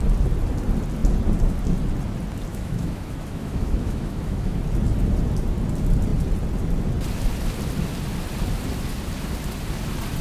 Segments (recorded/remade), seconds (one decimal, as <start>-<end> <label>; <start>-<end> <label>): 0.0-2.5 recorded; 2.5-4.6 remade; 4.6-10.2 recorded

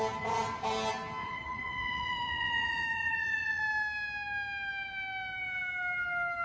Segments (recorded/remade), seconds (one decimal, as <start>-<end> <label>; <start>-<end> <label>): 0.0-1.2 recorded; 1.2-3.6 remade; 3.6-6.4 recorded